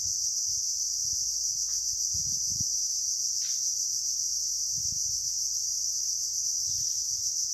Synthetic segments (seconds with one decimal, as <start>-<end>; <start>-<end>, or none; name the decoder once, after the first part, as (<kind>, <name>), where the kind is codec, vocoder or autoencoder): none